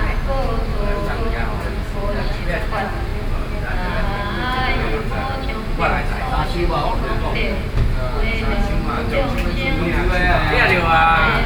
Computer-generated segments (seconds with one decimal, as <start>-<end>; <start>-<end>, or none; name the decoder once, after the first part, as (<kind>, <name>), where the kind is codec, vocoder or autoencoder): 0.7-1.2 (autoencoder, DAC-VAE)